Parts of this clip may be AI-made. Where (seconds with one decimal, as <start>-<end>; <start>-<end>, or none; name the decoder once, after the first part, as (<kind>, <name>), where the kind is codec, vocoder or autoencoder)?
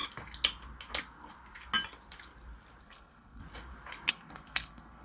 2.8-3.4 (codec, SNAC); 4.1-5.0